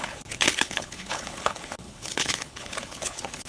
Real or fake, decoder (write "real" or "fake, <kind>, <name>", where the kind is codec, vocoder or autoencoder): fake, codec, HILCodec